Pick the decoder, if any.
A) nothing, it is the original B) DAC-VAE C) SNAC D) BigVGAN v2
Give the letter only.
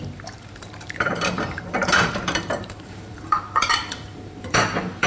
D